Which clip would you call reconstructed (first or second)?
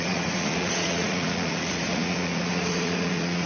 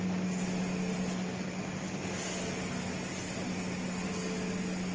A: first